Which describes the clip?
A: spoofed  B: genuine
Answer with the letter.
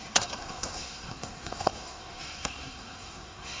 A